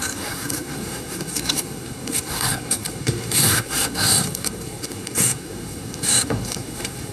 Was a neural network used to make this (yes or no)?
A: yes